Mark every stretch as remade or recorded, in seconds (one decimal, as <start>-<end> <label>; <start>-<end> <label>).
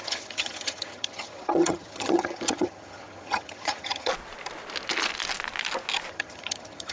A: 0.0-4.1 remade; 4.1-6.1 recorded; 6.1-6.9 remade